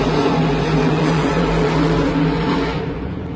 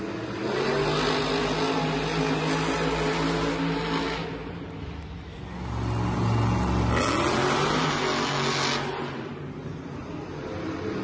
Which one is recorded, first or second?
second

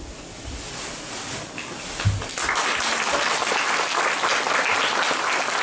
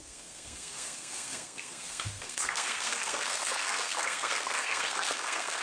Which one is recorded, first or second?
first